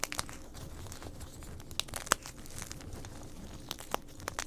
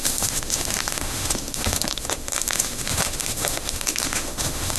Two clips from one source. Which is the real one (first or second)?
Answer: first